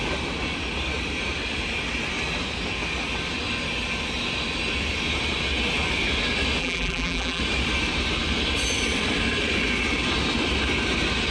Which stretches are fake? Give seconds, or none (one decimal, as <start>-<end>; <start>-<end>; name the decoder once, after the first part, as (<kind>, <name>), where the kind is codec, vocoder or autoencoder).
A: 6.6-7.4 (vocoder, BigVGAN v2)